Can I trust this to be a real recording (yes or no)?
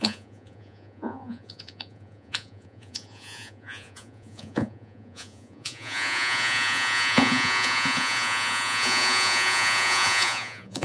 no